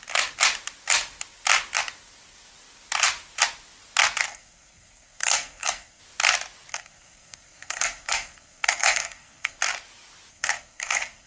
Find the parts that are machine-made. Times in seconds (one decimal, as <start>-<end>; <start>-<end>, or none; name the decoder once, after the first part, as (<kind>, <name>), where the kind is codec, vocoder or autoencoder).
4.3-6.0 (codec, SNAC); 6.7-9.6; 10.3-11.3